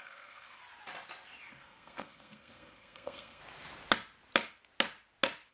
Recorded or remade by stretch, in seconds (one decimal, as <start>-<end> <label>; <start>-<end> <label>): 0.0-0.6 remade; 0.6-1.5 recorded; 1.5-3.4 remade; 3.4-5.5 recorded